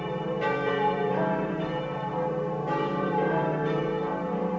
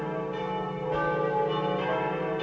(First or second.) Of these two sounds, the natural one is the second